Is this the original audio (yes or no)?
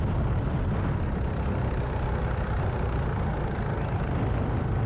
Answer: yes